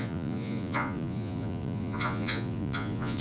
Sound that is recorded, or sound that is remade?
remade